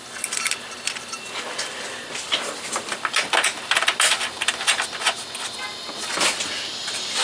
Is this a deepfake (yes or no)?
no